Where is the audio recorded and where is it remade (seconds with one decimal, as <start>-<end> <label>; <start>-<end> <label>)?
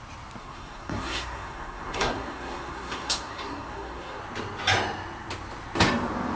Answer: 0.0-0.4 recorded; 0.4-4.2 remade; 4.2-6.4 recorded